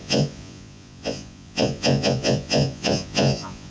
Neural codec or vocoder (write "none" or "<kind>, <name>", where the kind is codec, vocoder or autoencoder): vocoder, Vocos